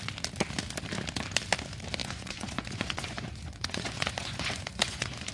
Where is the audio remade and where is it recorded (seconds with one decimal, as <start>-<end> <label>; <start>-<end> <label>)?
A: 0.0-2.0 recorded; 2.0-5.3 remade